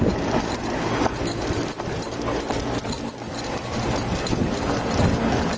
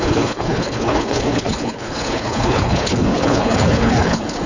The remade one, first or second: second